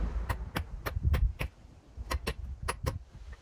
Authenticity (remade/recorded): recorded